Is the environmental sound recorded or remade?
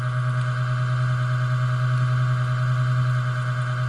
recorded